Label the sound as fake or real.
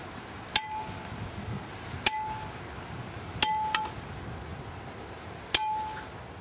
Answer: real